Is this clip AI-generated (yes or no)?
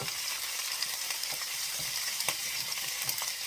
yes